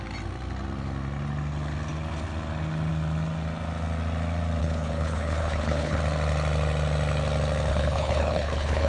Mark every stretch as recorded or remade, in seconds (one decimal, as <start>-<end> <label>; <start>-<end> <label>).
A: 0.0-4.6 recorded; 4.6-6.0 remade; 6.0-7.7 recorded; 7.7-8.9 remade